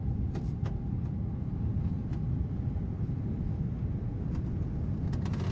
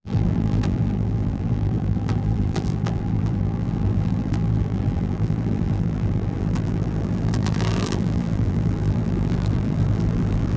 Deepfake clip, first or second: second